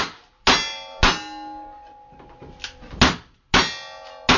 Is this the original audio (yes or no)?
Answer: yes